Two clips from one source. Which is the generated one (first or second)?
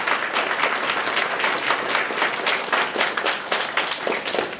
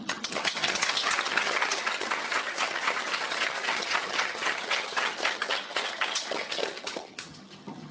second